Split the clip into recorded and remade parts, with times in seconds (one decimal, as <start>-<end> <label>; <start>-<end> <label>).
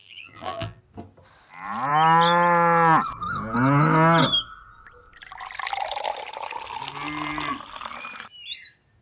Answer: 0.0-0.8 remade; 0.8-9.0 recorded